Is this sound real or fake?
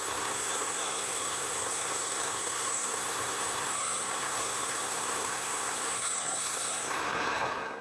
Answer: fake